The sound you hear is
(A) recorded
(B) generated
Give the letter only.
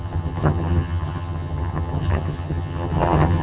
B